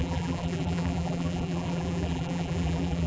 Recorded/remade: remade